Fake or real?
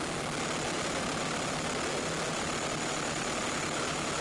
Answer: real